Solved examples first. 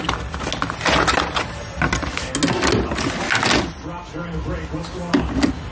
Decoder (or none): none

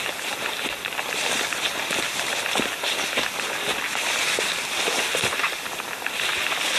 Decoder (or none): vocoder, BigVGAN v2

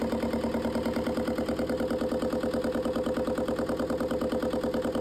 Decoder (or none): none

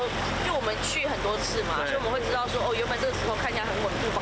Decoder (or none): none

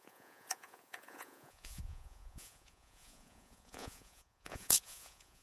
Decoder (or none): vocoder, Vocos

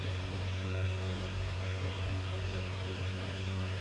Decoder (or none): codec, SNAC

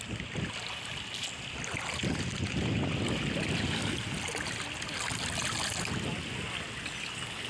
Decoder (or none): none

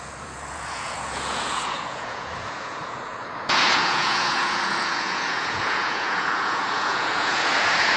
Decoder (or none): vocoder, Vocos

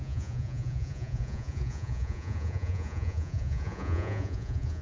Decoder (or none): vocoder, Vocos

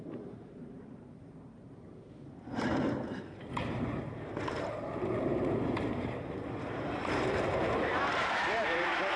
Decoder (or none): vocoder, BigVGAN v2